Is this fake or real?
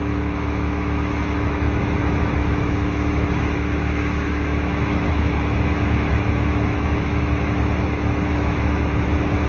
fake